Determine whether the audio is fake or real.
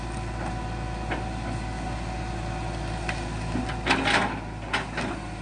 real